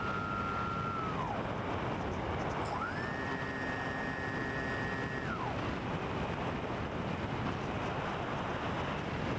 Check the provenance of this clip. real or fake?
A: real